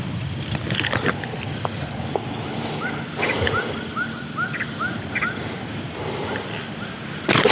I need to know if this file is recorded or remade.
recorded